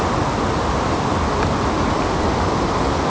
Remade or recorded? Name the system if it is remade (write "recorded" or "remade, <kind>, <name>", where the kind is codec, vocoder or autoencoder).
recorded